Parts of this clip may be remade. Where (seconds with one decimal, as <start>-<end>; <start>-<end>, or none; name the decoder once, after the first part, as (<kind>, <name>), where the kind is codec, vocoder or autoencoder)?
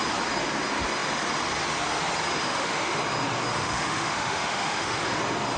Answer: 2.4-3.0 (autoencoder, DAC-VAE); 3.6-5.0